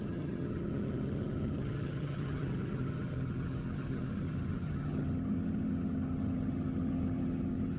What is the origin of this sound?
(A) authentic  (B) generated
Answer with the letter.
B